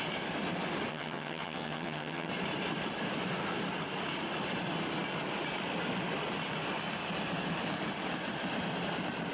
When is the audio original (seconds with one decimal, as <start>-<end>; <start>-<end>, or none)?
0.0-0.9; 2.3-9.3